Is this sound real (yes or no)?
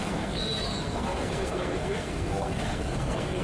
no